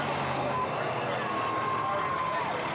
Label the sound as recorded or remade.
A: recorded